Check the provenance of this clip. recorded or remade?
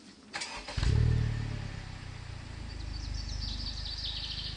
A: recorded